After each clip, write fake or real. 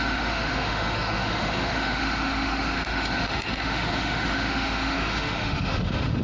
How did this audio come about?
fake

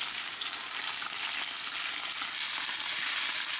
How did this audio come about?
real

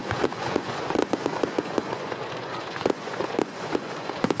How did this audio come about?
fake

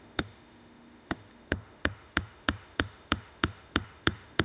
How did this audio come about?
fake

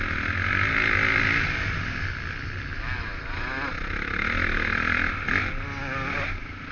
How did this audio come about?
real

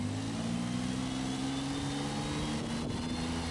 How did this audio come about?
real